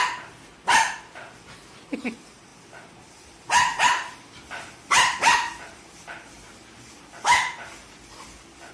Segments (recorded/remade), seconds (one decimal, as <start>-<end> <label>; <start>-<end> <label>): 0.0-8.7 recorded